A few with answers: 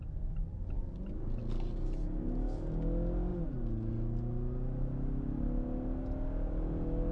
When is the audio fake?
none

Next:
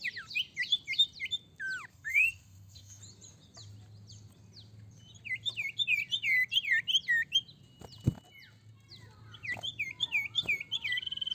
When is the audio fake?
1.9-3.0 (codec, SNAC)

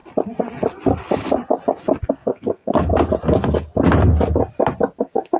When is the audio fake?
2.1-2.9 (codec, SNAC); 5.0-5.4

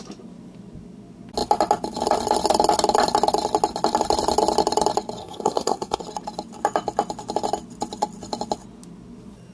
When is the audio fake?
5.2-6.0 (codec, SNAC)

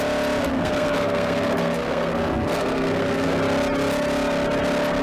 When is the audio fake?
0.4-3.4 (codec, SNAC)